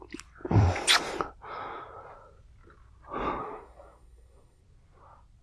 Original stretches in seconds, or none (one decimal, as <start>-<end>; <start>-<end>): 0.0-3.4; 4.6-5.4